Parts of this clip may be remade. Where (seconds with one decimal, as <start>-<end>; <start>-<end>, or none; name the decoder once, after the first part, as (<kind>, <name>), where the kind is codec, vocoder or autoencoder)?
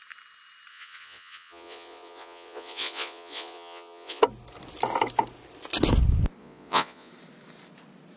0.7-4.2 (vocoder, Vocos); 6.4-7.1